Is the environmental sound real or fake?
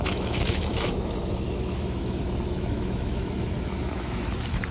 fake